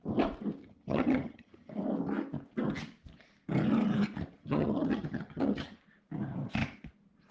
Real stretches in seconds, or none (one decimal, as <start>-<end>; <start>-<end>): 0.0-0.6; 1.7-4.4; 5.8-7.3